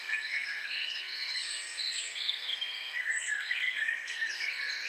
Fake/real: fake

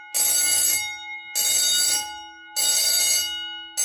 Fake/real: real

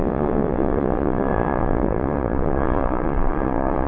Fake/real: fake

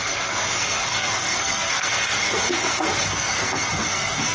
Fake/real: fake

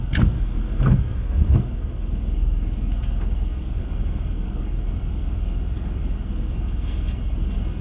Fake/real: fake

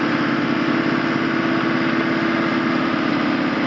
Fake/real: real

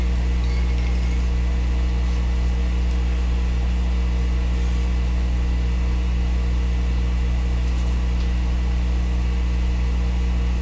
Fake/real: real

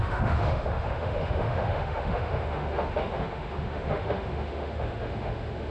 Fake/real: fake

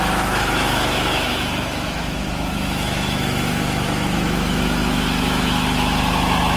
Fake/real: fake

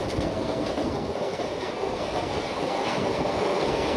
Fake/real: fake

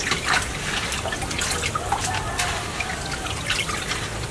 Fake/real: real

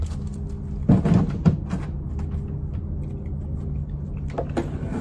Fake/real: real